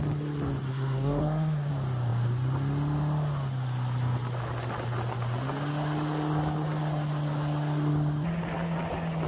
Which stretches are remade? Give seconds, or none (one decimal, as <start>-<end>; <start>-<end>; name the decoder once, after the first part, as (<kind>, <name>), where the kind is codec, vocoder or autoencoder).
0.7-1.7 (codec, SNAC)

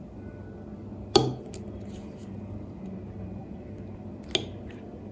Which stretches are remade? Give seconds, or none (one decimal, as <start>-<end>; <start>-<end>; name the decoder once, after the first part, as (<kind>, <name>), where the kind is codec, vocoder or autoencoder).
none

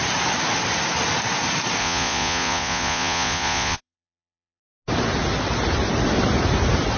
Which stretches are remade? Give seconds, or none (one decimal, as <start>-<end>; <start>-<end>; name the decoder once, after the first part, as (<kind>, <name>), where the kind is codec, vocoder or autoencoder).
1.8-4.6 (vocoder, Vocos)

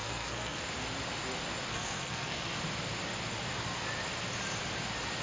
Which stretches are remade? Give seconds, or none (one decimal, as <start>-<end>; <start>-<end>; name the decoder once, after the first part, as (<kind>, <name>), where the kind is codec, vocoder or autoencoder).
0.0-0.6 (codec, SNAC); 1.7-2.6

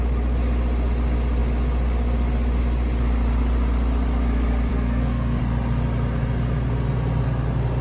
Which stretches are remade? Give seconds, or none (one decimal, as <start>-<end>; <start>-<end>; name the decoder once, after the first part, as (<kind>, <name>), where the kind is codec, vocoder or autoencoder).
4.7-5.4 (codec, SNAC)

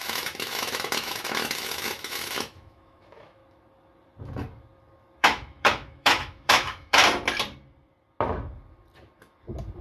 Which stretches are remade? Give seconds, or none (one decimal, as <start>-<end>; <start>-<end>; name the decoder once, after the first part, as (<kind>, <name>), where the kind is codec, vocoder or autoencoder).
0.0-3.4 (autoencoder, DAC-VAE); 5.2-7.0

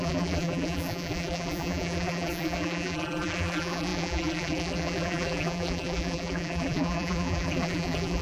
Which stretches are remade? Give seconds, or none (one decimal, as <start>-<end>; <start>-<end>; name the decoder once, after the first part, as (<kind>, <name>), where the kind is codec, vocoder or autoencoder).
0.0-8.2 (vocoder, BigVGAN v2)